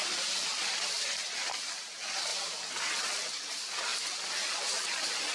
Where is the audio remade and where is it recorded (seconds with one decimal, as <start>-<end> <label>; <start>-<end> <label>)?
0.0-5.3 recorded